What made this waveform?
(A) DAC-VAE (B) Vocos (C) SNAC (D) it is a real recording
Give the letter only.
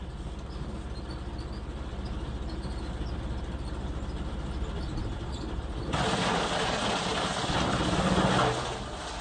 D